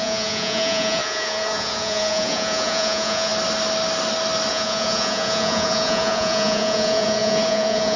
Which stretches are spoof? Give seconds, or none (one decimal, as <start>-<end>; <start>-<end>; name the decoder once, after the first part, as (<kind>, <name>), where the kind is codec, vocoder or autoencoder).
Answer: 0.0-3.3 (vocoder, Vocos); 4.5-8.0